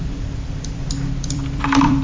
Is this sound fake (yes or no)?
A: yes